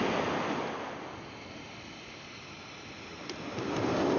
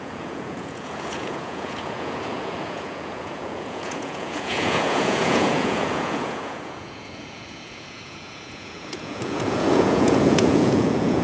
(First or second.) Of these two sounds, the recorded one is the first